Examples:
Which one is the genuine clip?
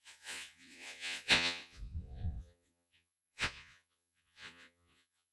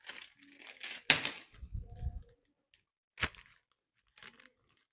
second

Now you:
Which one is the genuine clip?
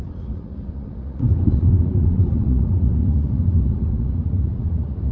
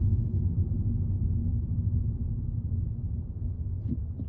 second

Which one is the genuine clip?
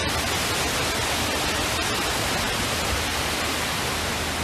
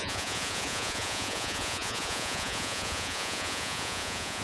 first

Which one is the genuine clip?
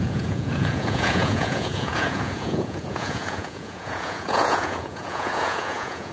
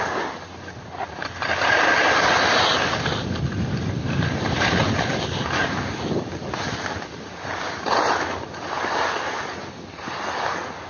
second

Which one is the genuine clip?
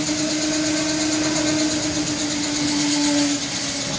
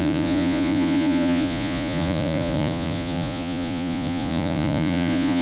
first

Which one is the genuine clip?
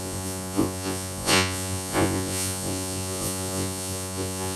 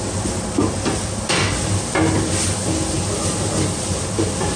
second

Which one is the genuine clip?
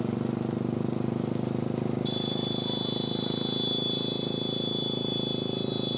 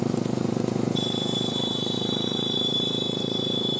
first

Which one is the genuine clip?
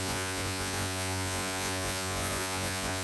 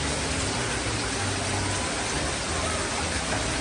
second